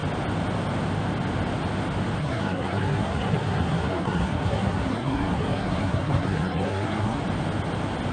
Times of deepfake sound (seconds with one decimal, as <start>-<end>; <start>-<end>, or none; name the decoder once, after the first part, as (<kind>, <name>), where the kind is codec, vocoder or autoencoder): 2.2-7.2 (codec, SNAC)